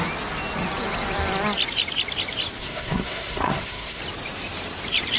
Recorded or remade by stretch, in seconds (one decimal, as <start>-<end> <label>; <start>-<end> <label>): 0.0-2.6 recorded; 2.6-4.0 remade; 4.0-5.2 recorded